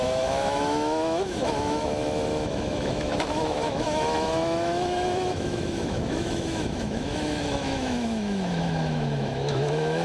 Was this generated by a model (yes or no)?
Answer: yes